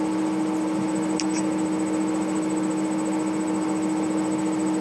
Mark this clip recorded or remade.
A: recorded